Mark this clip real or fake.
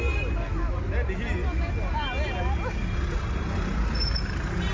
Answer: real